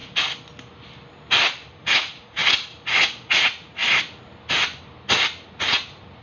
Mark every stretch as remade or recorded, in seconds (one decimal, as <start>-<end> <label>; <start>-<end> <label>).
0.0-1.9 recorded; 1.9-2.4 remade; 2.4-3.0 recorded; 3.0-3.8 remade; 3.8-5.5 recorded; 5.5-6.2 remade